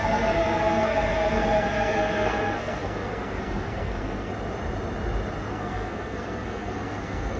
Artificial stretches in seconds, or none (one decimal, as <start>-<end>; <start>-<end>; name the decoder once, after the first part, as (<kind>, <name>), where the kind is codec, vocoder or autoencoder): 0.0-4.3 (codec, SNAC); 5.5-7.4